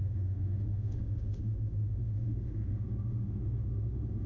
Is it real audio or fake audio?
fake